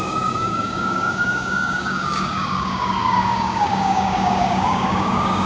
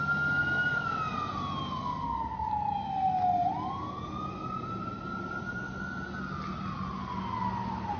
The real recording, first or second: second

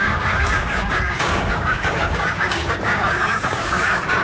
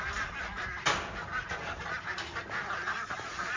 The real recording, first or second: second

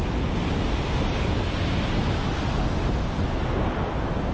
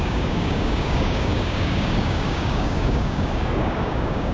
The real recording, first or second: first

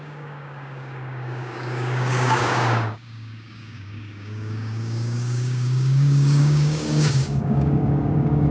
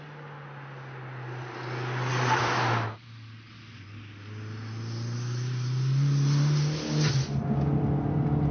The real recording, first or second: second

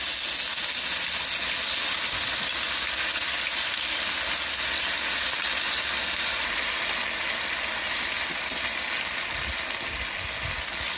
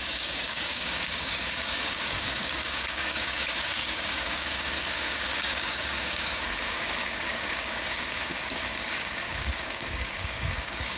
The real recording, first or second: first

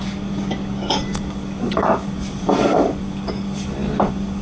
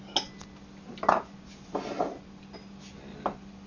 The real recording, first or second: second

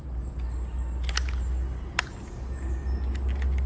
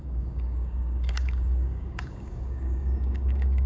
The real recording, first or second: first